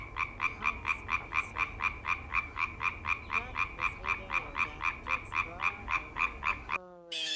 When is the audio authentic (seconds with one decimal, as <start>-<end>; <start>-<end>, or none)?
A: 0.0-2.3; 2.8-5.8